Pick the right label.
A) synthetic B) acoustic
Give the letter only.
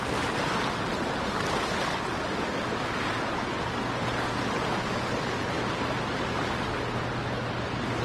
B